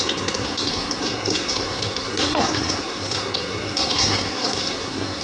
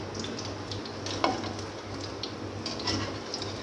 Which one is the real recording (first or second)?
second